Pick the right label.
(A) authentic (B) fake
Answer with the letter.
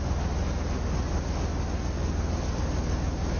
A